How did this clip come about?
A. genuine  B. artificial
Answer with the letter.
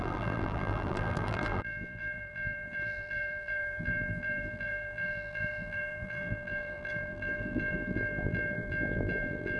B